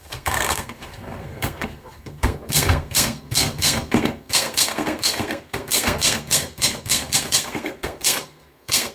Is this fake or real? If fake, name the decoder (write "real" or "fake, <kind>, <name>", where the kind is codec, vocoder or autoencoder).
fake, codec, SNAC